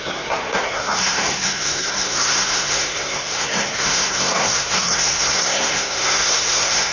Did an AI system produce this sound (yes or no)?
yes